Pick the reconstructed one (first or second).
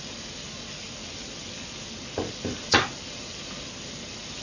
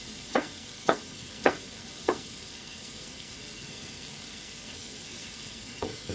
second